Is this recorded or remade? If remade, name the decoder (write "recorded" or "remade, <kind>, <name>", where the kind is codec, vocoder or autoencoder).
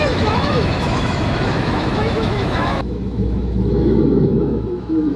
remade, autoencoder, DAC-VAE